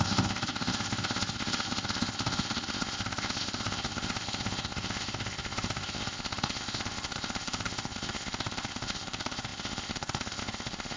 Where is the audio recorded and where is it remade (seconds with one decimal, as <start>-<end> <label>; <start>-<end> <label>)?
0.0-11.0 remade

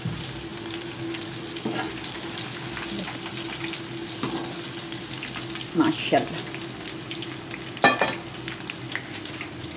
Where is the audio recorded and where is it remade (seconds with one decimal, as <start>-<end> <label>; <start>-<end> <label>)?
0.0-9.8 recorded

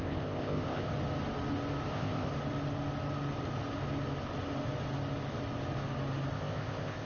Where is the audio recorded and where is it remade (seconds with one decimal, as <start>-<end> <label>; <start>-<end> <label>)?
0.0-0.9 remade; 0.9-1.9 recorded; 1.9-2.3 remade; 2.3-6.3 recorded; 6.3-7.1 remade

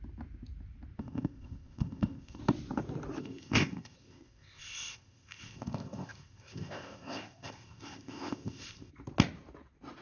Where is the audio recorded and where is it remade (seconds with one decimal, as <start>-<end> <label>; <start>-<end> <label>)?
0.0-1.0 recorded; 1.0-2.4 remade; 2.4-3.2 recorded; 3.2-8.9 remade; 8.9-10.0 recorded